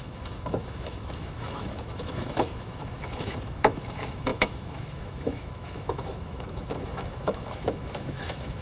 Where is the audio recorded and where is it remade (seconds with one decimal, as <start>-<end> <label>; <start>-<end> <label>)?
0.0-8.6 remade